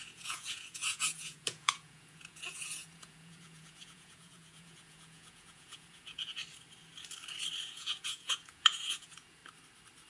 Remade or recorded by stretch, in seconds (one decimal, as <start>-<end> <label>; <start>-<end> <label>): 0.0-6.4 remade; 6.4-7.6 recorded; 7.6-9.4 remade; 9.4-10.1 recorded